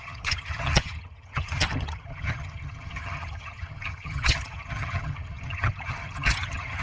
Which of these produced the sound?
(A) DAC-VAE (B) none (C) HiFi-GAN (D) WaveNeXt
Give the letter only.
C